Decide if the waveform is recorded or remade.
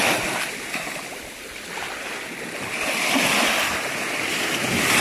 recorded